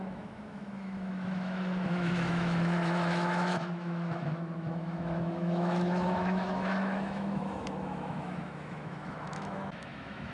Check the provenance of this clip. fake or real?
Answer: fake